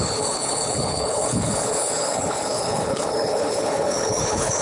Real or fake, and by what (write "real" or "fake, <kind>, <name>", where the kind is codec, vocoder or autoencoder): fake, codec, HILCodec